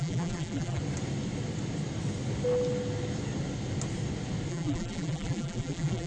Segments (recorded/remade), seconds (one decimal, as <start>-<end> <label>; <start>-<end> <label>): 0.0-0.8 remade; 0.8-4.5 recorded; 4.5-6.1 remade